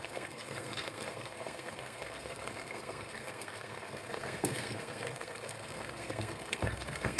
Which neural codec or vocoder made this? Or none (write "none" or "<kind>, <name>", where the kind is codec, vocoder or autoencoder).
codec, SNAC